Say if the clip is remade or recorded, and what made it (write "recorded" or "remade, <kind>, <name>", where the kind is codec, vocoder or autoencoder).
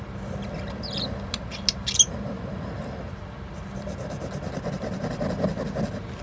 recorded